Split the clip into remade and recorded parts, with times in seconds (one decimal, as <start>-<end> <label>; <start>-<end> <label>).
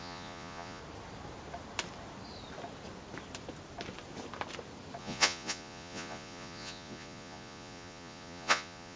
0.0-0.8 remade; 0.8-5.0 recorded; 5.0-9.0 remade